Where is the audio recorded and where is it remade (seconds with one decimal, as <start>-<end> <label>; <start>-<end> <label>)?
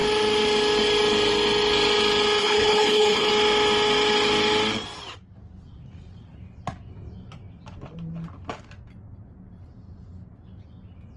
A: 0.0-2.4 recorded; 2.4-3.3 remade; 3.3-11.2 recorded